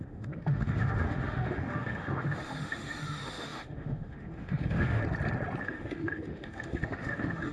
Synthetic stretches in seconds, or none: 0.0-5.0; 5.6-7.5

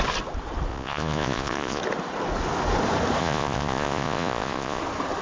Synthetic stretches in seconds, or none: 0.7-1.8; 3.2-4.8

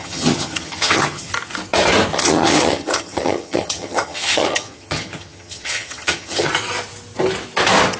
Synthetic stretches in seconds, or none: 0.0-1.3; 2.1-6.5

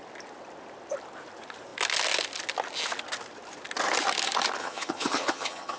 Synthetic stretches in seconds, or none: 4.6-5.8

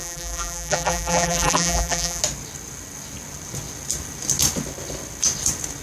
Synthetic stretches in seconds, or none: 0.0-2.2

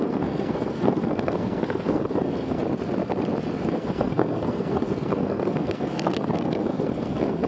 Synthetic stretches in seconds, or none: 0.0-2.6; 3.7-7.5

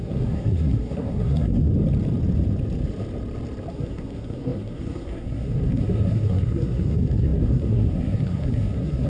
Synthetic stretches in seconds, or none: 0.0-1.7; 3.7-9.1

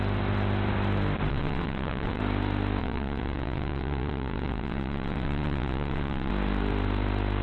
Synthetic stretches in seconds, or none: 1.3-2.2; 2.8-6.3